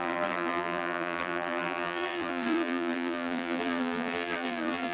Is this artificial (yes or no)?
yes